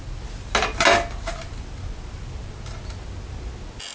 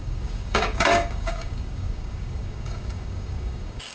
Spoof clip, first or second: second